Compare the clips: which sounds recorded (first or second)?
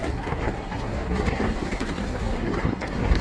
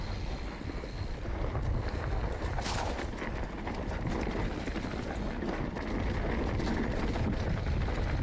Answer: second